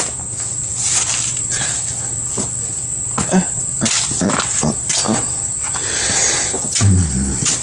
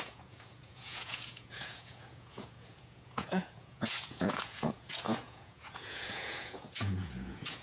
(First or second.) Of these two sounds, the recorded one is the first